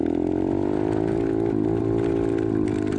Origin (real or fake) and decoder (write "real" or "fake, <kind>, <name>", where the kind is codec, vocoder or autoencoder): real